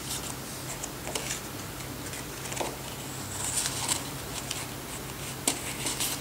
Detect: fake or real real